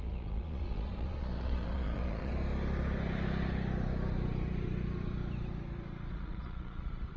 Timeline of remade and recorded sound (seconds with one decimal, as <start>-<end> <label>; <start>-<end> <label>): 0.0-2.3 remade; 2.3-6.1 recorded; 6.1-7.2 remade